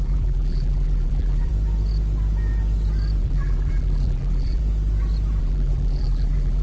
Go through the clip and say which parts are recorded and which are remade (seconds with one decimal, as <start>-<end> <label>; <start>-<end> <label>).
0.0-1.5 remade; 1.5-3.2 recorded; 3.2-4.6 remade; 4.6-5.4 recorded; 5.4-6.6 remade